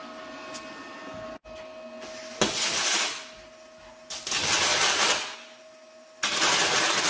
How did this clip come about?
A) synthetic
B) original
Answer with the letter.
B